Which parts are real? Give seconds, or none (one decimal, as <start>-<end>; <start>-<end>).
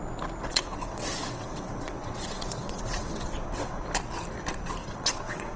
0.0-0.4; 3.8-4.8